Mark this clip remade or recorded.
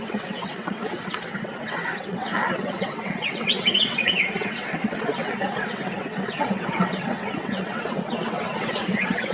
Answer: remade